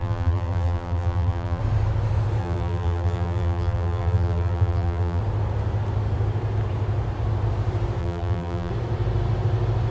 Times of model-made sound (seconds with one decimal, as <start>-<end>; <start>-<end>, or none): 0.0-1.6; 2.4-5.2; 8.0-8.7